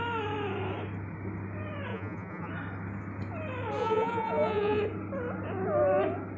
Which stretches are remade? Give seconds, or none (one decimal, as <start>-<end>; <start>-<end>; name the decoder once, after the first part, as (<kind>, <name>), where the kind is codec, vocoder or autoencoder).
1.9-2.5 (vocoder, Vocos); 3.8-4.8